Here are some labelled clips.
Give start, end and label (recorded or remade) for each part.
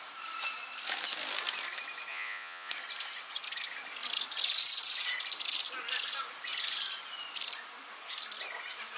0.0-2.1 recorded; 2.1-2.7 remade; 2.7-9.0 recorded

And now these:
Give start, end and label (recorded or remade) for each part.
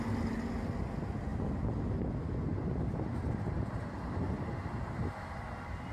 0.0-5.9 recorded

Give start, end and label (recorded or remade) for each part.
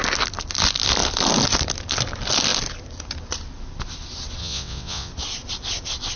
0.0-4.4 recorded; 4.4-5.1 remade; 5.1-6.2 recorded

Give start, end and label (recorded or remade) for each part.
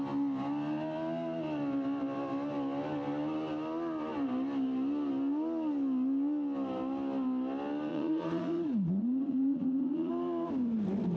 0.0-7.9 recorded; 7.9-10.1 remade; 10.1-11.2 recorded